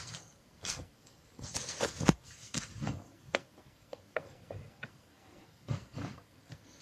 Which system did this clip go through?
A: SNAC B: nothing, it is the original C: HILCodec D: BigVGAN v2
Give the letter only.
A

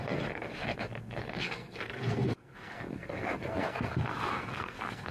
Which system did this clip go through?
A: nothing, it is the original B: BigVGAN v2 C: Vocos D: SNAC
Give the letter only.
D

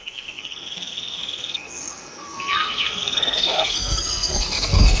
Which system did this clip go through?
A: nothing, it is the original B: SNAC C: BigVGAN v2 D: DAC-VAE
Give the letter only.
B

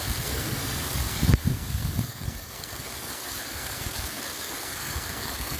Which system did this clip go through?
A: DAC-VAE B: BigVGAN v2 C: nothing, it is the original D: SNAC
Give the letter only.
D